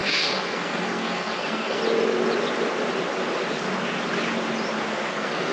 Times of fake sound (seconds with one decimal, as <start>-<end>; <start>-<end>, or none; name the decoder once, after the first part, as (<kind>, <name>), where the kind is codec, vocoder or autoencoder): 0.0-1.8 (codec, SNAC); 5.1-5.5